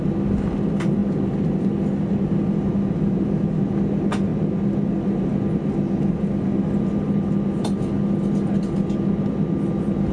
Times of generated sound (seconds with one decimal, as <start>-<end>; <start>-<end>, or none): none

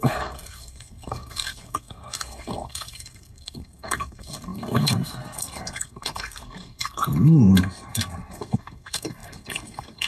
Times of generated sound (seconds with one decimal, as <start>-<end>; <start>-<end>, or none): 0.0-10.1